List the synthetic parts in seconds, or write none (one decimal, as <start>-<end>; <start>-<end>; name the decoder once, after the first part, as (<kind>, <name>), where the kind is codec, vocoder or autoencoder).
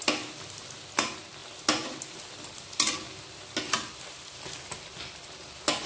none